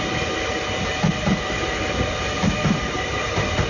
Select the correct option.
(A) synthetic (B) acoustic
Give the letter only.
B